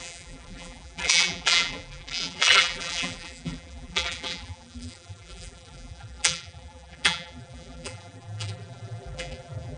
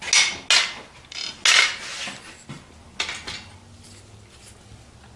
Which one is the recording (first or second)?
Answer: second